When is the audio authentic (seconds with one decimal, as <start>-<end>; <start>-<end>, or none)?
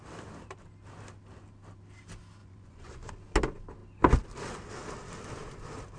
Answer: 0.0-2.4; 3.1-6.0